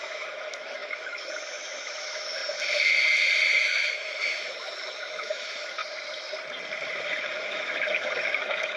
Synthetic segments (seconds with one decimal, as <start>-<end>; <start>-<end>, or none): 0.0-2.4; 3.6-5.8; 7.2-8.8